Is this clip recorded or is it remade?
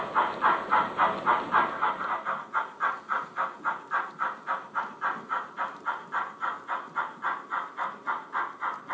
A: recorded